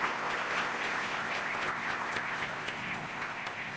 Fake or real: fake